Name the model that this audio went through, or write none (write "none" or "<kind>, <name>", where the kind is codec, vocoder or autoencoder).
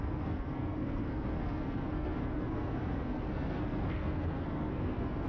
codec, SNAC